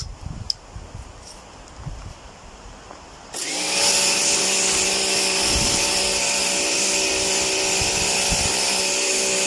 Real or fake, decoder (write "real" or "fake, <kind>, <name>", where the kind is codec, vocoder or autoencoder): real